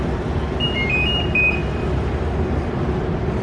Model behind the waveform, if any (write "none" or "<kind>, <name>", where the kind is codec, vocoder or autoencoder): none